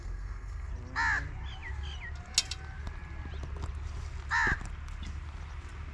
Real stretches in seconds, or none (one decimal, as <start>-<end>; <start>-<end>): 0.7-5.9